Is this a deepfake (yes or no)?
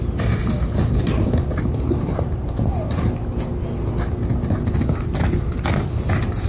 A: no